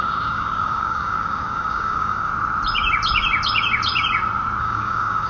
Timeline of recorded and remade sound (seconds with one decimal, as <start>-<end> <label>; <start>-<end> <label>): 0.0-2.3 remade; 2.3-4.6 recorded; 4.6-5.3 remade